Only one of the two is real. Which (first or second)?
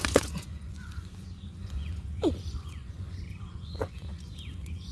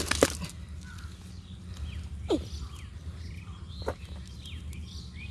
second